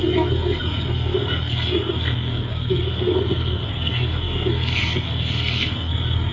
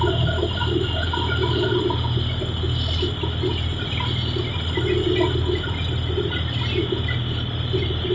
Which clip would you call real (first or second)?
second